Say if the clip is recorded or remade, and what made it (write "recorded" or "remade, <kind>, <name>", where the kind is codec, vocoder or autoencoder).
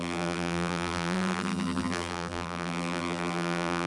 remade, vocoder, BigVGAN v2